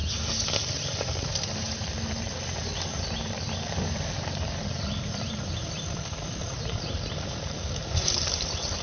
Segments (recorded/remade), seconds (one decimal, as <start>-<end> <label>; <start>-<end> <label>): 0.0-0.7 recorded; 0.7-8.8 remade